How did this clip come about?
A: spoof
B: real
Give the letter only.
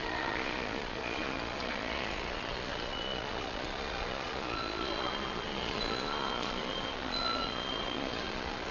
A